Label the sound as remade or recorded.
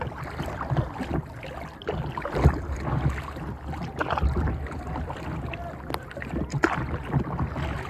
recorded